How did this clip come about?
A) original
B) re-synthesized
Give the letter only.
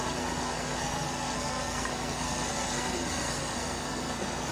B